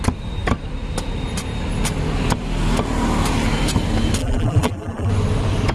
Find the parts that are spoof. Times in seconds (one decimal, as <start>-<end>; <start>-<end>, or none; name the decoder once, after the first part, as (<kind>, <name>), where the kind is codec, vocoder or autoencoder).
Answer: 4.2-5.1 (vocoder, BigVGAN v2)